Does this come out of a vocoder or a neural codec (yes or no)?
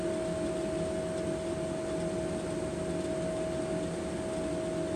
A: no